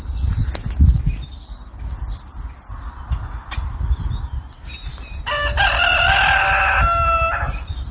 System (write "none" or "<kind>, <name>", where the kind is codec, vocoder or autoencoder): none